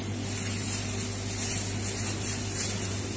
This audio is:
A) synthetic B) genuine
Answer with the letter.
B